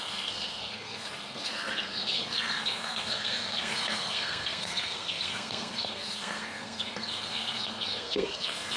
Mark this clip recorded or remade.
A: remade